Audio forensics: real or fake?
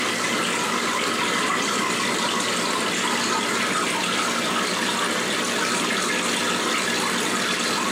real